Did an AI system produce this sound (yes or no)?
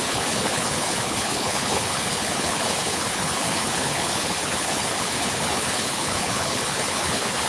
yes